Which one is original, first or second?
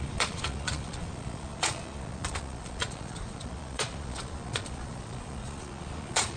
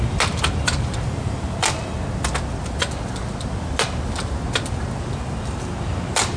second